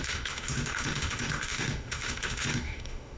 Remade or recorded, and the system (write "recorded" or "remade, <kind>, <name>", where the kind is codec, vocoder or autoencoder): remade, autoencoder, DAC-VAE